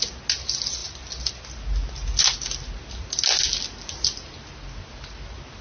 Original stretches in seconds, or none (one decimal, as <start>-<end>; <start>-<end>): 0.0-5.6

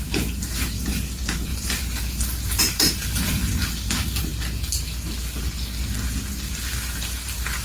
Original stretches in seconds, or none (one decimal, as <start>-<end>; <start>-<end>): 4.3-6.3

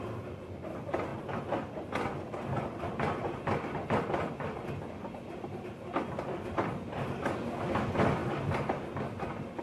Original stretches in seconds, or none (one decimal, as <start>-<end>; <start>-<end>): 0.0-9.6

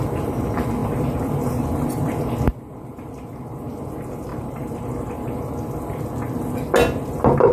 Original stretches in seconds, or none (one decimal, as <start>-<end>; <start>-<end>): 0.0-4.3; 5.3-7.5

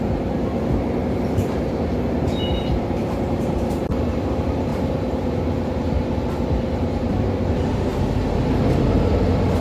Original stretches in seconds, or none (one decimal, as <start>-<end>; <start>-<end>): 7.9-8.7

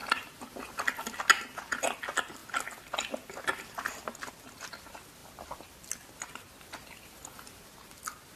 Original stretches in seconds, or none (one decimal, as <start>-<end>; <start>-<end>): 0.0-8.4

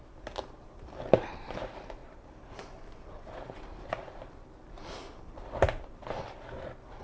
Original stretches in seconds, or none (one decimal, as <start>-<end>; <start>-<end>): 0.0-2.0; 6.2-7.0